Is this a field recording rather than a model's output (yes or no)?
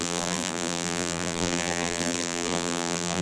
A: no